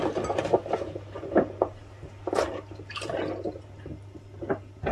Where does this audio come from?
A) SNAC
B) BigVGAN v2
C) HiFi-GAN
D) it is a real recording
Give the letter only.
D